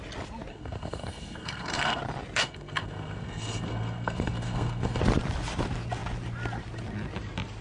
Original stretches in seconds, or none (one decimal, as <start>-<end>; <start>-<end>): 0.0-0.5; 2.0-2.4; 5.0-7.6